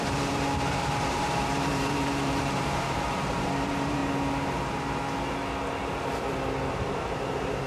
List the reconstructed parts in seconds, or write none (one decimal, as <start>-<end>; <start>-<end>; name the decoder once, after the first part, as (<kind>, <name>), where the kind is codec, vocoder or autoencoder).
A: 0.0-4.0 (vocoder, BigVGAN v2); 6.7-7.7